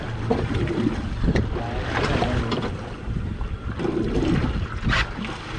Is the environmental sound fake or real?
real